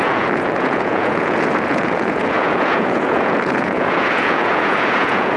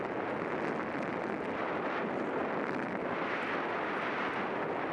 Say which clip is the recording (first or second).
second